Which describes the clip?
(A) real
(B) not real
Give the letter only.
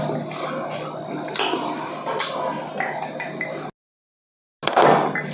A